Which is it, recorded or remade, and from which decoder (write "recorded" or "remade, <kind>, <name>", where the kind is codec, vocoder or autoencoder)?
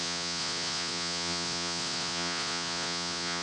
remade, vocoder, Vocos